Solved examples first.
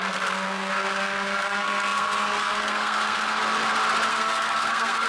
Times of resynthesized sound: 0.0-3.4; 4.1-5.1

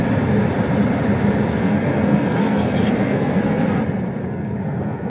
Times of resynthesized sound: 1.6-3.8; 4.2-5.1